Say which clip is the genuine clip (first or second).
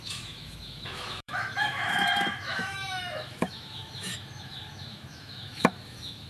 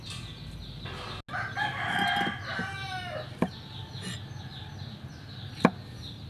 second